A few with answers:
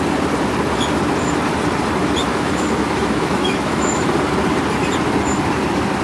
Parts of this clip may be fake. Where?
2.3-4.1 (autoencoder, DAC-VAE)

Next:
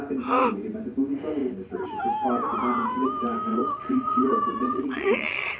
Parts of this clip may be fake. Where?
3.5-5.6 (vocoder, Vocos)